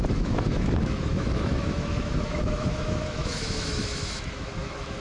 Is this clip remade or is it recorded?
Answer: remade